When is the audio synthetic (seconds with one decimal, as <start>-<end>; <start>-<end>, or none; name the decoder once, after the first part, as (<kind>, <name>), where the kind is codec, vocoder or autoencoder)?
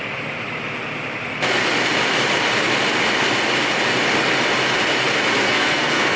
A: 5.4-6.2 (codec, SNAC)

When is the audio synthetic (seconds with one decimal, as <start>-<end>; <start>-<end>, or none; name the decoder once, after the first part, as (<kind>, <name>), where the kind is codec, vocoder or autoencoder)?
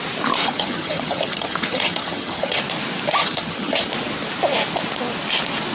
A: 0.4-2.6 (vocoder, HiFi-GAN); 3.2-3.9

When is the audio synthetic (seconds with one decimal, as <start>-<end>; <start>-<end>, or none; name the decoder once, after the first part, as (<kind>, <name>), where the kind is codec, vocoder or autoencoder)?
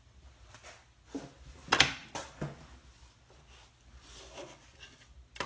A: none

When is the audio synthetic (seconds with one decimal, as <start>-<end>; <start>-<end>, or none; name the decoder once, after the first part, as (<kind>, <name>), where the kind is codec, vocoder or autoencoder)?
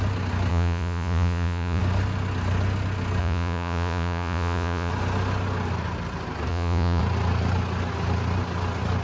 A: 0.5-1.8 (vocoder, Vocos); 3.2-4.9; 6.5-7.0